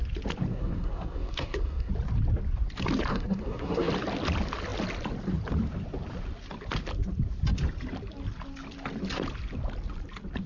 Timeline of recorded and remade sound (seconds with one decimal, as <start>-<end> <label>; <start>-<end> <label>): 0.0-0.5 recorded; 0.5-1.9 remade; 1.9-3.1 recorded; 3.1-3.9 remade; 3.9-10.5 recorded